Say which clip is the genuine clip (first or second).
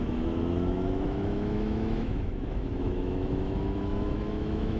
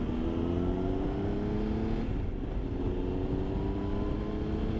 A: second